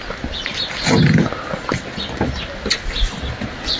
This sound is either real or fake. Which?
real